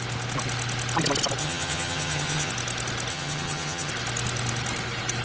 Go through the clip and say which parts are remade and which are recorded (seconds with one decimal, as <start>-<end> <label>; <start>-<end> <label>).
0.0-1.4 recorded; 1.4-2.5 remade; 2.5-3.1 recorded; 3.1-3.9 remade; 3.9-5.2 recorded